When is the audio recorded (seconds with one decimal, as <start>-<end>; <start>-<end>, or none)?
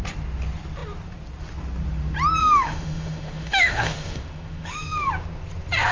0.0-2.4; 5.1-5.9